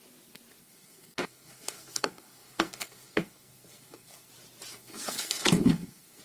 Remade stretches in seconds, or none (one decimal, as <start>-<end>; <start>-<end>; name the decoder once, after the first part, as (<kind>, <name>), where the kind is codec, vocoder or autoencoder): 0.6-4.3 (codec, SNAC); 4.7-6.2

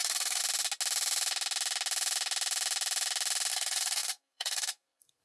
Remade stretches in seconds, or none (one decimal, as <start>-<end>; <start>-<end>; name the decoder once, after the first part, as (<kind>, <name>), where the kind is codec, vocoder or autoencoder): 0.0-0.4 (codec, SNAC); 3.5-5.2

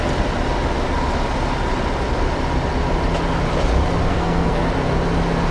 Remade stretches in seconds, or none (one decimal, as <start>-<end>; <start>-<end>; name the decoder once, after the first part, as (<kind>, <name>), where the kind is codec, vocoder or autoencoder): 4.1-4.7 (codec, SNAC)